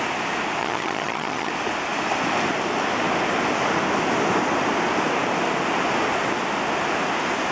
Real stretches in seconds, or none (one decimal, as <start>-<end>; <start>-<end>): 0.0-0.6; 1.5-7.5

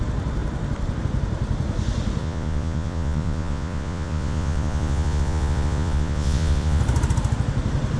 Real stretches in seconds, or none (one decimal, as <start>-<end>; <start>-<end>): 0.0-2.2; 6.8-8.0

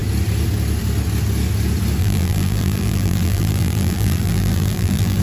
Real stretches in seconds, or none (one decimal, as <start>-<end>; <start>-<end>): 0.0-2.0

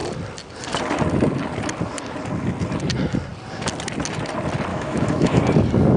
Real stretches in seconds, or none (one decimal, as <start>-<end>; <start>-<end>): 0.0-4.7; 5.4-6.0

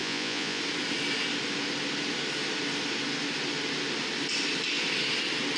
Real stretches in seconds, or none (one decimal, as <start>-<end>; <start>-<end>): 0.6-5.6

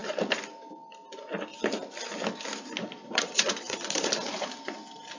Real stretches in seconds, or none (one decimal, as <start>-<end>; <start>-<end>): 0.0-3.0; 4.1-5.2

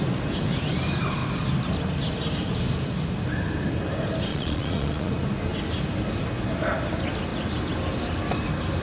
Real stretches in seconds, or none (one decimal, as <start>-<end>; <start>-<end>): 0.0-4.3; 5.1-8.8